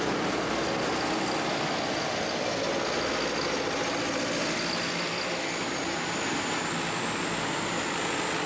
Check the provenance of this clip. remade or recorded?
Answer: recorded